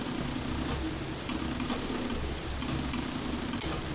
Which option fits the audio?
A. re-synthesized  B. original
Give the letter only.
B